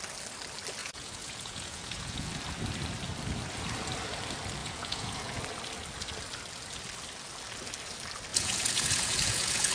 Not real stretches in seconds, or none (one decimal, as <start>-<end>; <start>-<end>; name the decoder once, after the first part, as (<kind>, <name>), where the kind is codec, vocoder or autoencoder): 0.8-2.3 (vocoder, Vocos); 4.6-5.4; 8.3-9.7